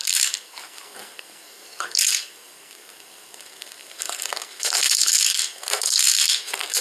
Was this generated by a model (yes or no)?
yes